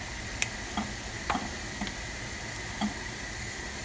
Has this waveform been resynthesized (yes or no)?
no